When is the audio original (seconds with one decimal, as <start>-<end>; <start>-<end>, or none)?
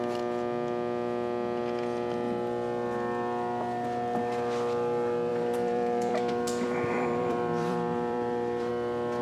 0.0-5.3; 8.7-9.2